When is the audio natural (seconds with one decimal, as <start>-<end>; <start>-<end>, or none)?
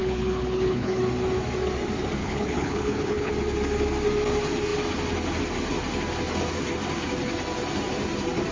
1.0-2.2; 3.3-8.5